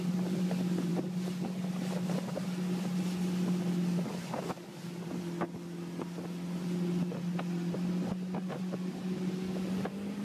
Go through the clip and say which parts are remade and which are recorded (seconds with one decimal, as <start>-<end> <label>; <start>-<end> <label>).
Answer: 0.0-10.2 recorded